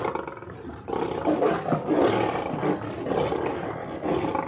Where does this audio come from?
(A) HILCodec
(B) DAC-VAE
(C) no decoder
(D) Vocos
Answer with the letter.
C